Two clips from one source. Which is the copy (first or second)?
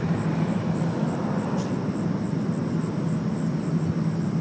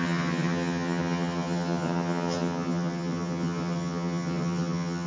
second